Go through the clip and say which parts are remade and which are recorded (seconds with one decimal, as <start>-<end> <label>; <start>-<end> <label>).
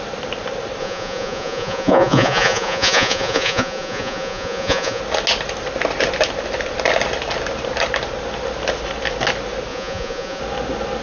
0.0-0.8 recorded; 0.8-5.0 remade; 5.0-9.7 recorded; 9.7-10.4 remade; 10.4-11.0 recorded